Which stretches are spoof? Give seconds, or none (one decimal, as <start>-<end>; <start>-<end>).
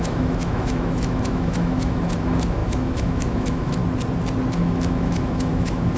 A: 0.0-3.8; 4.5-6.0